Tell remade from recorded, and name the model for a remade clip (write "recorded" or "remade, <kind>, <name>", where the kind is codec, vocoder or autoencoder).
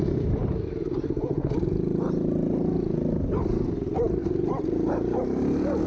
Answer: recorded